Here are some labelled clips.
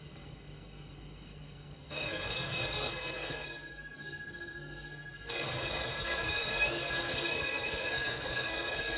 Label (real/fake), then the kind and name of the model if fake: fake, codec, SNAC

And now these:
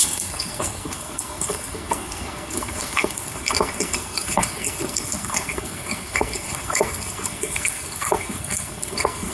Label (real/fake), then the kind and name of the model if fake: fake, codec, SNAC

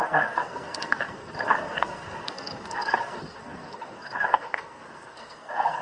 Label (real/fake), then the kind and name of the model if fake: fake, codec, SNAC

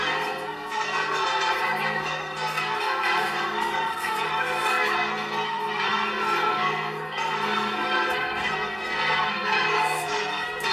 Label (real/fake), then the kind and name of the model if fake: fake, codec, SNAC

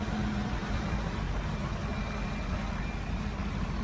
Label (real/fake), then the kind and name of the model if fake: real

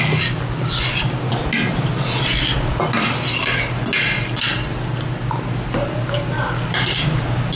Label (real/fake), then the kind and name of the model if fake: real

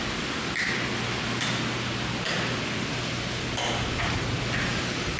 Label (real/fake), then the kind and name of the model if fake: real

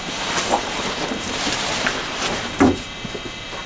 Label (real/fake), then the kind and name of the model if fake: real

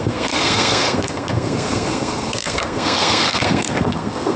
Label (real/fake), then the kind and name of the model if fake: fake, codec, SNAC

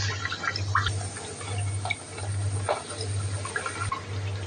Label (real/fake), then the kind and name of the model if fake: real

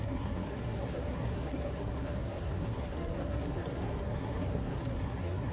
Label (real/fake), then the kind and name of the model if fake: fake, codec, SNAC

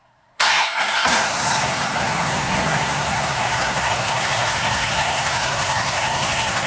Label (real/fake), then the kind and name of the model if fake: fake, codec, SNAC